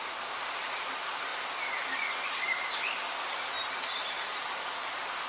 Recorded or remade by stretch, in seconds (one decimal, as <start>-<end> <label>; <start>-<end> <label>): 0.0-5.3 recorded